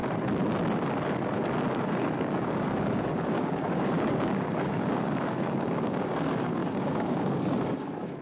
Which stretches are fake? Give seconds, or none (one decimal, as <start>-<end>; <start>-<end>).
1.8-8.2